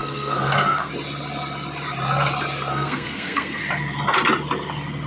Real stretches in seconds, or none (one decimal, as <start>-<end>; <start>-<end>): 0.9-2.7; 3.6-5.1